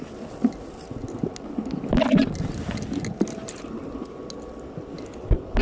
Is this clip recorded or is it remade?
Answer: recorded